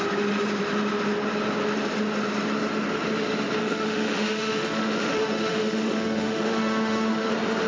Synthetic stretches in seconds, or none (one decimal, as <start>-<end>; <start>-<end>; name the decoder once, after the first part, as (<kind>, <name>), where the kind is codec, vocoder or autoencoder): 3.6-7.3 (autoencoder, DAC-VAE)